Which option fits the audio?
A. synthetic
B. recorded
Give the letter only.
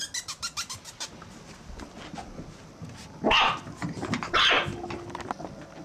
B